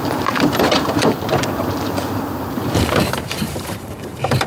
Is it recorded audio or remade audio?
remade